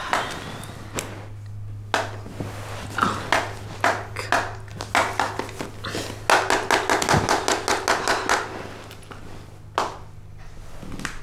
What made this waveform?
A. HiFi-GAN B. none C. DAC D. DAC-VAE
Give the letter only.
B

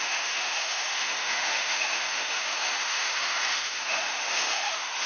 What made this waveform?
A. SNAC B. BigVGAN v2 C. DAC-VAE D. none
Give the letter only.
C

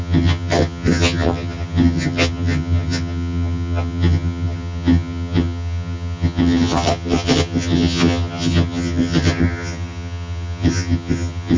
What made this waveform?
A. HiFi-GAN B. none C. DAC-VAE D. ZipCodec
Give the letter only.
A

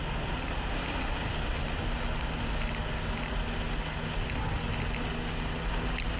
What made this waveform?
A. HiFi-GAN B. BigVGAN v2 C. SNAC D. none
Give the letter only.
D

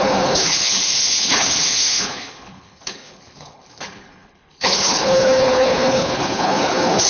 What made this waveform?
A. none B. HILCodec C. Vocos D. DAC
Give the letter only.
B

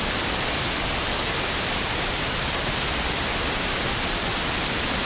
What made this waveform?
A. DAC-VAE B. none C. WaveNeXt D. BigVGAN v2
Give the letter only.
B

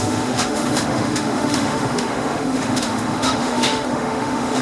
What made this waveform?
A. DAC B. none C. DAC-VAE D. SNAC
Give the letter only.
C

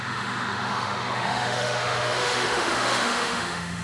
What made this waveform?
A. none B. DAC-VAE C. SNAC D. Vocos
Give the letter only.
B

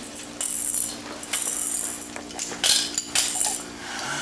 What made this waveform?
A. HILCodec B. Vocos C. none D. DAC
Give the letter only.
C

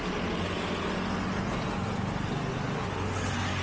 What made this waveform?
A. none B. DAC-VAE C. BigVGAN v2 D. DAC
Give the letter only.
A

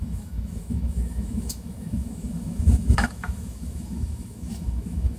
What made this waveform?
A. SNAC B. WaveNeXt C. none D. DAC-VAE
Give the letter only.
D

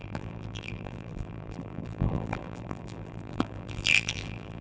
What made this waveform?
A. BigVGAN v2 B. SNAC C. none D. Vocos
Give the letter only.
A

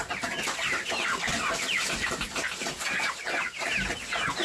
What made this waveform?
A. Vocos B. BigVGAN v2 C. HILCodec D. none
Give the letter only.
D